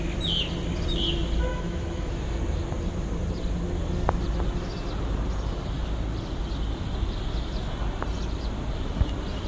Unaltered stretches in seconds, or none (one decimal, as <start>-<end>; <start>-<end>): 0.0-1.5; 2.1-9.5